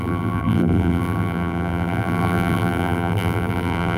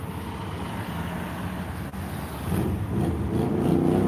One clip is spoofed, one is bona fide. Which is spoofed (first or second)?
first